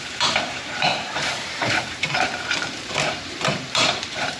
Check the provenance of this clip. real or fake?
fake